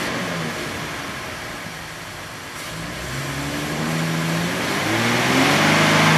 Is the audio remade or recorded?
recorded